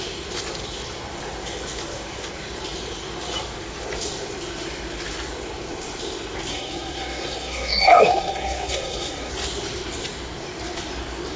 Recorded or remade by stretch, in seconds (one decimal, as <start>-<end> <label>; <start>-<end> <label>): 0.0-6.5 recorded; 6.5-9.3 remade; 9.3-11.4 recorded